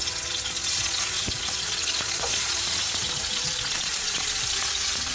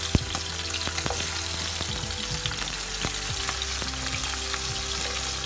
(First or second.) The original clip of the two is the second